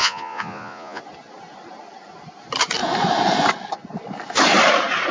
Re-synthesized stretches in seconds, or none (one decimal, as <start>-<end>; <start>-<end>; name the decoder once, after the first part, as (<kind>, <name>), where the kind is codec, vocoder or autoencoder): 0.0-1.0 (vocoder, Vocos)